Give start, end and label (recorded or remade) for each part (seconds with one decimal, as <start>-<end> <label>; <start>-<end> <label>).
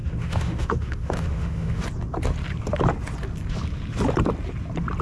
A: 0.0-1.8 remade; 1.8-5.0 recorded